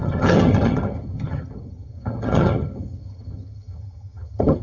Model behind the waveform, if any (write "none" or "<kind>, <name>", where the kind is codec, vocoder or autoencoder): vocoder, HiFi-GAN